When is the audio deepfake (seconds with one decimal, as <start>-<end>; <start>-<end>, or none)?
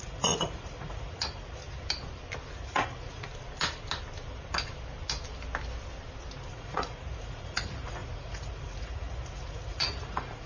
0.0-1.6; 2.5-3.3; 6.5-10.5